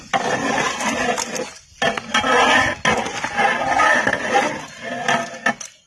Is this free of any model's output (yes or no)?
yes